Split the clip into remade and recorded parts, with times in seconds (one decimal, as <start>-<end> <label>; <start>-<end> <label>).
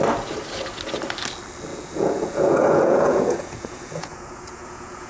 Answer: 0.0-1.7 recorded; 1.7-5.1 remade